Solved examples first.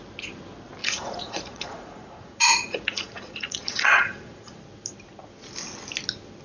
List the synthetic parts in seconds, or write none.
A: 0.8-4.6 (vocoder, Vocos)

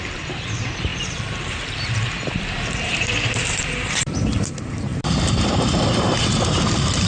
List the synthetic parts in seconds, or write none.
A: 0.0-4.9 (vocoder, BigVGAN v2); 6.0-7.1

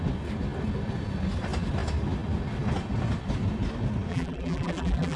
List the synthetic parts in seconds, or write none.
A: 4.1-5.2 (vocoder, BigVGAN v2)

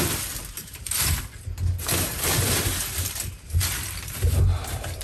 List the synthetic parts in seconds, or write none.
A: 0.6-1.2 (vocoder, BigVGAN v2)

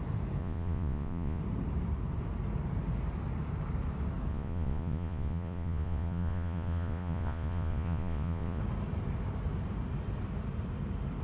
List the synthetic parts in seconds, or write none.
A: 0.4-1.4 (vocoder, Vocos); 4.3-8.6